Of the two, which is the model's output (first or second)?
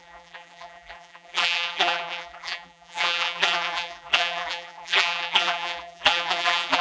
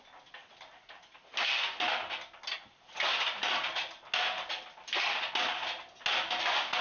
first